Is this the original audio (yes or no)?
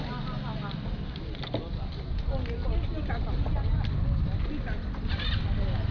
yes